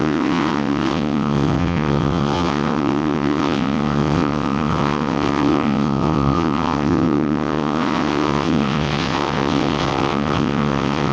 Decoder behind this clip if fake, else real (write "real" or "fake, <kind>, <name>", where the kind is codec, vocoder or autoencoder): fake, vocoder, WaveNeXt